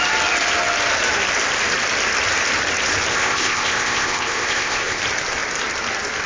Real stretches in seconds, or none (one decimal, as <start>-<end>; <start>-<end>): 0.0-3.1; 5.0-6.3